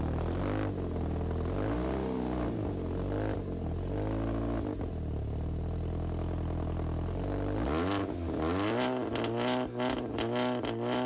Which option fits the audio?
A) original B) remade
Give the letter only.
A